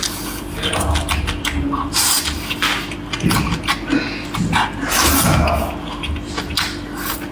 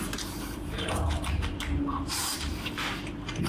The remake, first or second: second